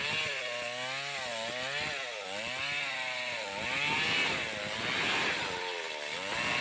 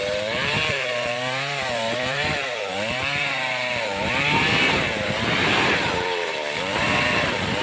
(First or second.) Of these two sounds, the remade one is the second